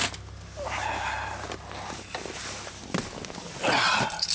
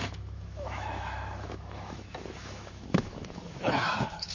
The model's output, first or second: second